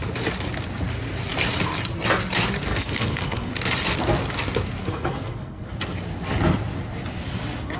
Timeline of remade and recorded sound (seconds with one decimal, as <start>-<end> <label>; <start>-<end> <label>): 0.0-2.7 recorded; 2.7-3.5 remade; 3.5-4.8 recorded; 4.8-5.7 remade; 5.7-7.8 recorded